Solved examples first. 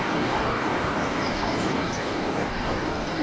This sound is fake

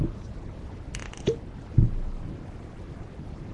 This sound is real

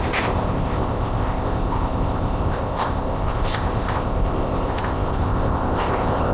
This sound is fake